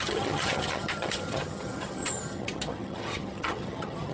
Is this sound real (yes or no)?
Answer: no